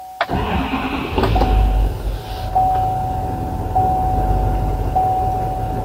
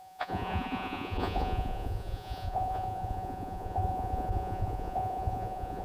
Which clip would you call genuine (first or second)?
first